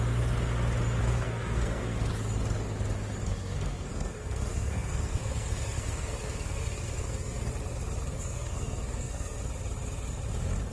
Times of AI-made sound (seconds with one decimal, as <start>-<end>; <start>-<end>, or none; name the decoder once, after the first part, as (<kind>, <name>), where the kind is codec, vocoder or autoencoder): 1.0-2.1 (codec, SNAC); 3.2-7.5; 8.1-9.4